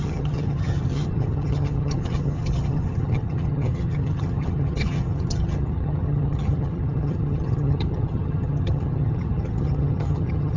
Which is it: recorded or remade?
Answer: remade